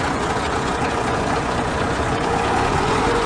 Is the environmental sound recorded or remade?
remade